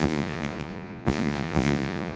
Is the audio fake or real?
fake